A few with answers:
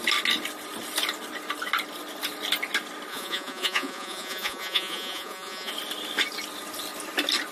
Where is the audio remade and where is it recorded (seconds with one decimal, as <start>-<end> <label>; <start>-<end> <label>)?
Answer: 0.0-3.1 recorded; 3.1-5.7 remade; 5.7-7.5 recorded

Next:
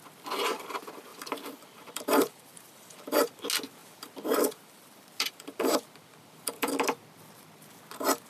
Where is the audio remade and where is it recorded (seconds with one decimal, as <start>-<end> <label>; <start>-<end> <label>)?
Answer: 0.0-1.1 recorded; 1.1-3.3 remade; 3.3-3.8 recorded; 3.8-6.7 remade; 6.7-8.3 recorded

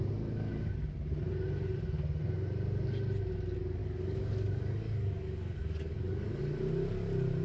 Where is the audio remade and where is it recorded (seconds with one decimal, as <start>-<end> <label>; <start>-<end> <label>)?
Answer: 0.0-3.8 recorded; 3.8-6.4 remade; 6.4-7.4 recorded

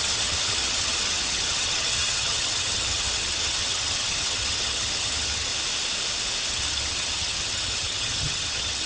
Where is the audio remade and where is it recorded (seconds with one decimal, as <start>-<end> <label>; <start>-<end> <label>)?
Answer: 0.0-5.5 remade; 5.5-6.5 recorded; 6.5-8.9 remade

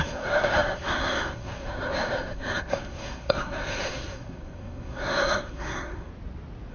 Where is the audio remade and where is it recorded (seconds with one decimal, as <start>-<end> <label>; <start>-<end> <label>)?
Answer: 0.0-6.1 remade; 6.1-6.7 recorded

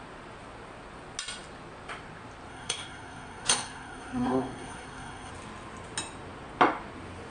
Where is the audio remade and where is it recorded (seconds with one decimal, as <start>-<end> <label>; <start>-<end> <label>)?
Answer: 0.0-2.5 recorded; 2.5-5.3 remade; 5.3-7.3 recorded

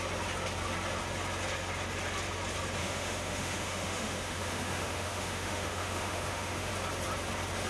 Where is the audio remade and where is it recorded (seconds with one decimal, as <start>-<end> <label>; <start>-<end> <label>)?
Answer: 0.0-2.8 recorded; 2.8-6.7 remade; 6.7-7.7 recorded

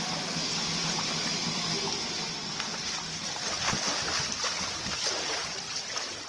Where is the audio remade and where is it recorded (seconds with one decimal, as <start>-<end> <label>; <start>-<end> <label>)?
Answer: 0.0-2.4 recorded; 2.4-3.0 remade; 3.0-6.3 recorded